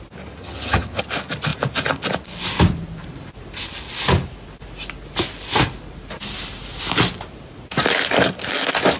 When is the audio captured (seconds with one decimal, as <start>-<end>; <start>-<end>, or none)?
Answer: 0.0-0.4; 1.0-9.0